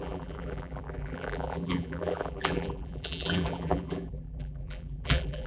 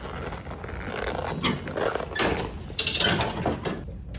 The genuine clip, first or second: second